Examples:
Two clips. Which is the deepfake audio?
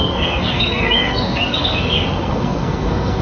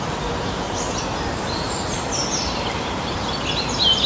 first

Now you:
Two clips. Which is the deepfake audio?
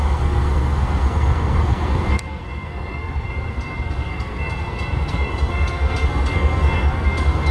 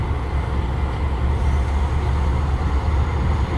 first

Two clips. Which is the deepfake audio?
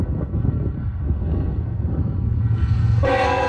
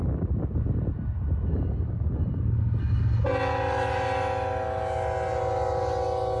first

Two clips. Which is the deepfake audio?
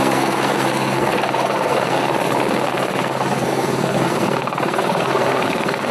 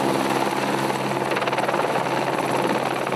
first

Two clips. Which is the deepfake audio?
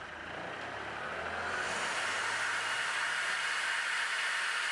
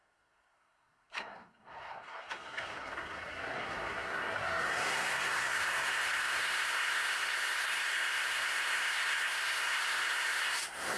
second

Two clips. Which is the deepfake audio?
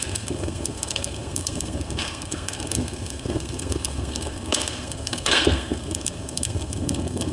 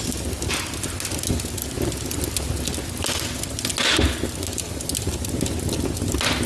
first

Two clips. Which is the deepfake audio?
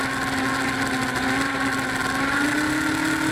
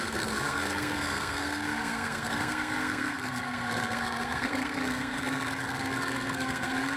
second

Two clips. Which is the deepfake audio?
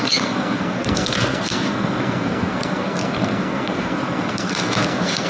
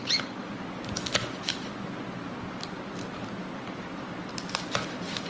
first